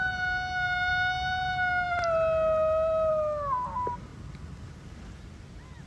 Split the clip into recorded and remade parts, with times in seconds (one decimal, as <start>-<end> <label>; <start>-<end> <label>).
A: 0.0-4.1 recorded; 4.1-5.4 remade; 5.4-5.9 recorded